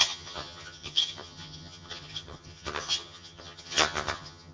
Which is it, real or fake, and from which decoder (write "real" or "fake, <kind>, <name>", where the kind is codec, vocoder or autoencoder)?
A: fake, vocoder, HiFi-GAN